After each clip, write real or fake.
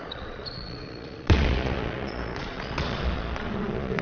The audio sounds fake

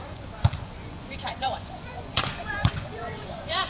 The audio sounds fake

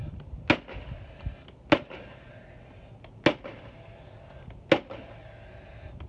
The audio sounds real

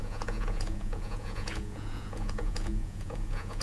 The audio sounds fake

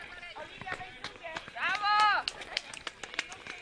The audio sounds real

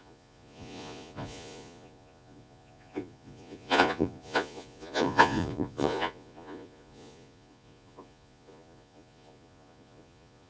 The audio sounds fake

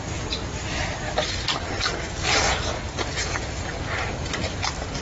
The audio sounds real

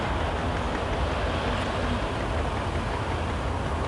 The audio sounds real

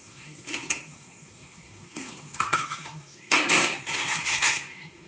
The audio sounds fake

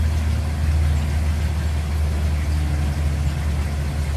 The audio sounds real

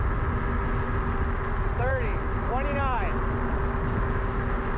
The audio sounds real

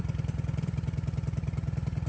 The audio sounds real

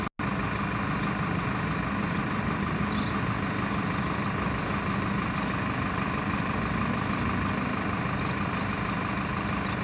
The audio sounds real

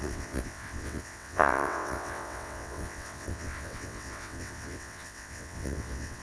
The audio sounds fake